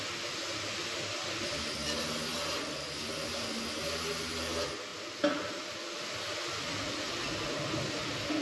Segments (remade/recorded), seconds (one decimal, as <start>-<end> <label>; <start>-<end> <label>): 0.0-8.4 recorded